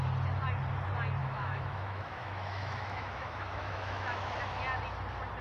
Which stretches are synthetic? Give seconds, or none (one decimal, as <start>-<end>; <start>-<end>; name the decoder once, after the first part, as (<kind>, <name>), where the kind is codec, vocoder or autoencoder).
1.2-4.4 (autoencoder, DAC-VAE)